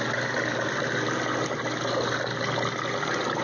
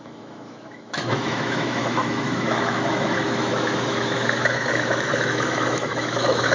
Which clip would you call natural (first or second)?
first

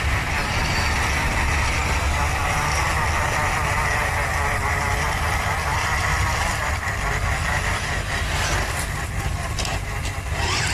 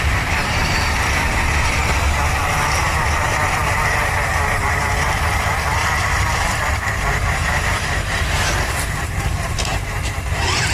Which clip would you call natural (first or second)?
first